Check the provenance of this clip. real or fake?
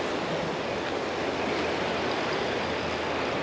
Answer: real